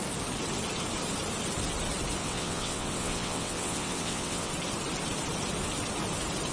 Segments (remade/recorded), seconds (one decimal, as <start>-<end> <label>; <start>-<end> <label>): 0.0-2.2 recorded; 2.2-4.5 remade; 4.5-6.5 recorded